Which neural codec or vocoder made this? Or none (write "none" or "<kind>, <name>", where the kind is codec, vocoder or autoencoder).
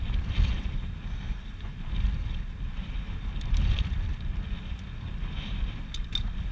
none